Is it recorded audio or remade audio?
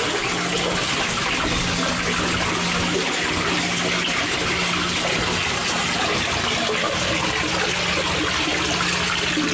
recorded